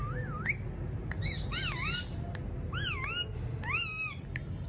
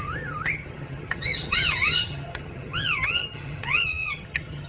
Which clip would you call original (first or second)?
first